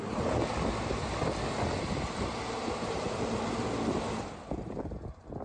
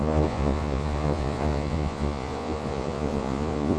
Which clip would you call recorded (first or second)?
first